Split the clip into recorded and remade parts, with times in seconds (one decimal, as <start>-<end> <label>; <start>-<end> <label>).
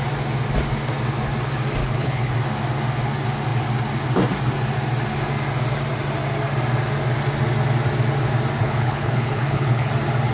0.0-1.8 recorded; 1.8-2.3 remade; 2.3-8.6 recorded; 8.6-9.9 remade; 9.9-10.3 recorded